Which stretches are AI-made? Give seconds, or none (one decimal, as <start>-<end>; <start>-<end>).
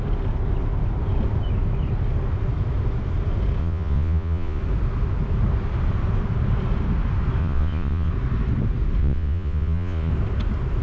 3.6-4.6; 7.4-8.1; 9.0-10.1